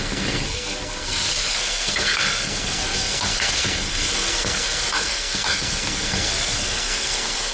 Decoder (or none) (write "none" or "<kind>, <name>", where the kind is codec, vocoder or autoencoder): codec, SNAC